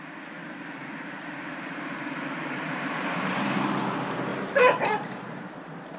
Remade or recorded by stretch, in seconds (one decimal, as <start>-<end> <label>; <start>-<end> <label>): 0.0-0.8 recorded; 0.8-3.7 remade; 3.7-4.3 recorded; 4.3-6.0 remade